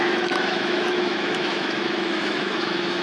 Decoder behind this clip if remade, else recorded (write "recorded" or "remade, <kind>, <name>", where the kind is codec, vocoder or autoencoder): remade, autoencoder, DAC-VAE